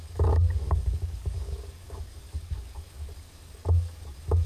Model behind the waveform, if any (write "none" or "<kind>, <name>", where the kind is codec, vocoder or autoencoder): codec, DAC